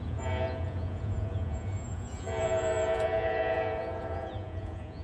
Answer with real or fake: fake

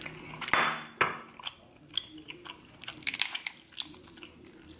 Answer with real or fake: real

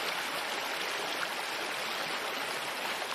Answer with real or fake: real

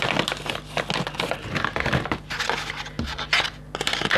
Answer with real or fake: real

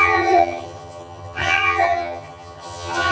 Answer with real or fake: fake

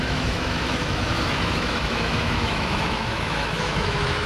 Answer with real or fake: fake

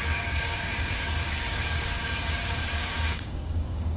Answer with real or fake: fake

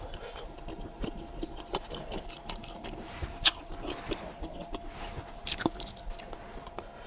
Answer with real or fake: real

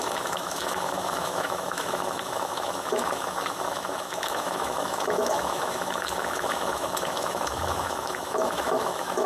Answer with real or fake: fake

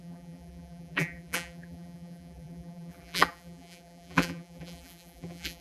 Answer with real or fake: fake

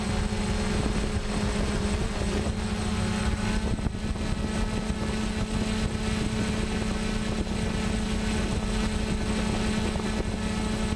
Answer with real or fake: real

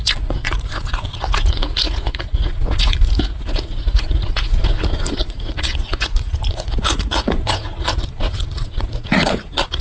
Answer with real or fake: fake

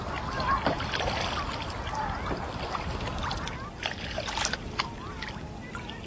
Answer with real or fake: real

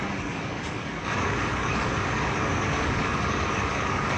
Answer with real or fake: fake